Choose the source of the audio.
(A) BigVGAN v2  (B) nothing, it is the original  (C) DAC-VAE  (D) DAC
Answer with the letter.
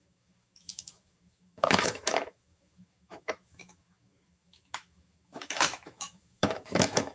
C